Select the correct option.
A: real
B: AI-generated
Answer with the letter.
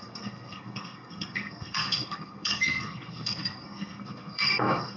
B